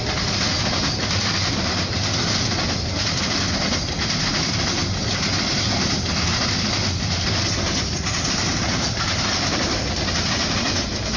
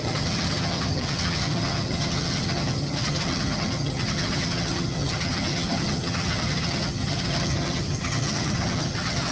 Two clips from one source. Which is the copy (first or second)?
second